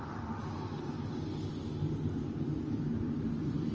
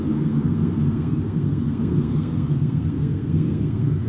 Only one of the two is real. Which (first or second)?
first